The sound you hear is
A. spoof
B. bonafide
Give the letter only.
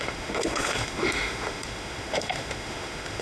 A